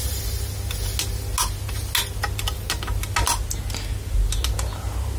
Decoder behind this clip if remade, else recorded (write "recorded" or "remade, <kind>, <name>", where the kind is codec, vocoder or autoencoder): recorded